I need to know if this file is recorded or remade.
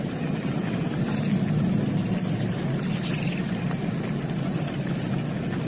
recorded